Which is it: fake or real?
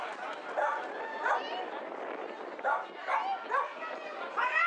real